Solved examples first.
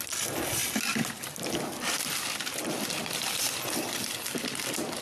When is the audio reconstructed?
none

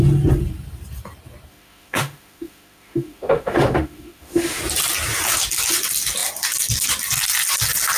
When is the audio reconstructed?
1.5-4.6 (autoencoder, DAC-VAE)

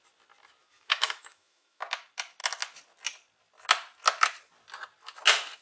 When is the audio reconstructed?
0.6-1.8 (autoencoder, DAC-VAE)

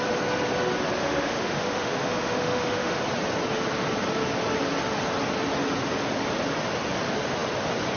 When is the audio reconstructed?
1.0-3.0 (autoencoder, DAC-VAE)